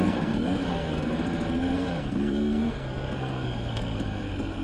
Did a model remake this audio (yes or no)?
yes